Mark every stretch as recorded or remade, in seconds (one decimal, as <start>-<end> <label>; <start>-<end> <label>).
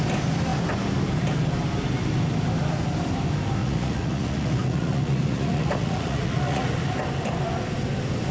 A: 0.0-3.6 recorded; 3.6-6.7 remade; 6.7-8.3 recorded